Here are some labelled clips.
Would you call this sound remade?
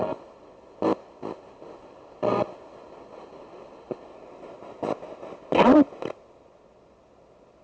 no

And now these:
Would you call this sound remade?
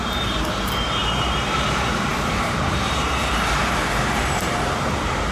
yes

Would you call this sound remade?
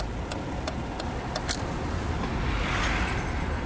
no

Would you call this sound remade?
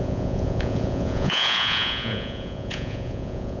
yes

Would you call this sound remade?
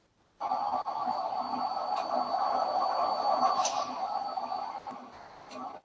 no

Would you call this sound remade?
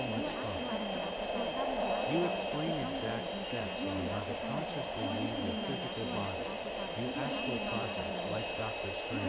no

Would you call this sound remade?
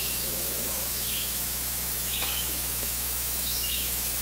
yes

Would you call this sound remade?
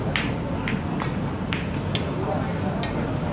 no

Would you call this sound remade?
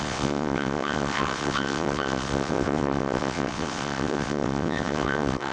yes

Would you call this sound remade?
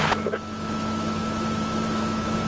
yes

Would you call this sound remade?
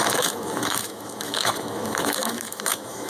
yes